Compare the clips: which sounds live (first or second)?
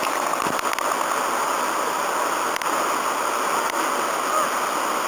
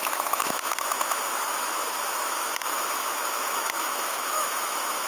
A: first